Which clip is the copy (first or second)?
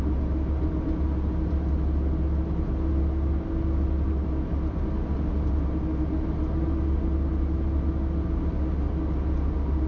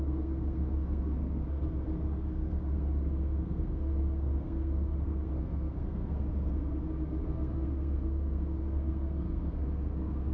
second